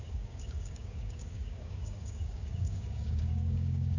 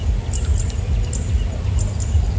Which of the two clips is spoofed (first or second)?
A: first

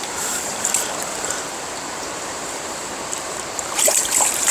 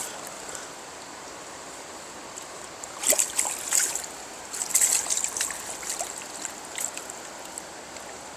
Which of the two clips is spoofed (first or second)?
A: first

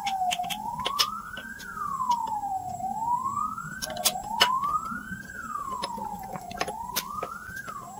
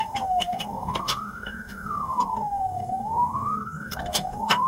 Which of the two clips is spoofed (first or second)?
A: second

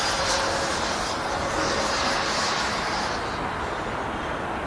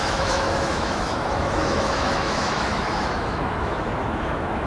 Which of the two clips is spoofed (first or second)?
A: second